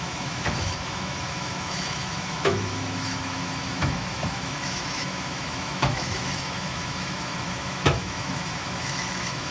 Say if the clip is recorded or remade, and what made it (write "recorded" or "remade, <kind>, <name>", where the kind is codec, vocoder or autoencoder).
remade, autoencoder, DAC-VAE